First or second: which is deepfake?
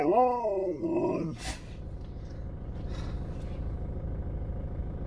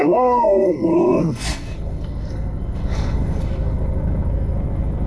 second